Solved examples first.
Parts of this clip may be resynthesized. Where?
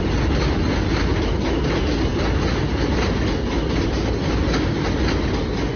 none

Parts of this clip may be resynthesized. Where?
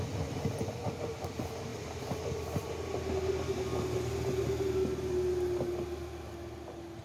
none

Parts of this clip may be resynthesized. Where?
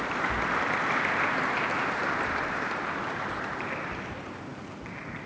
none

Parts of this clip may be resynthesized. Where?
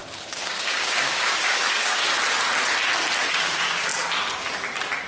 0.0-2.0 (codec, DAC); 3.3-3.9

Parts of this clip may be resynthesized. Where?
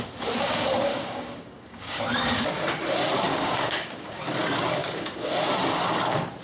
0.9-2.0 (codec, DAC); 3.3-4.2; 4.8-5.3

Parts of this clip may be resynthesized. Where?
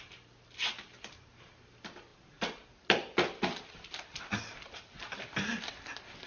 none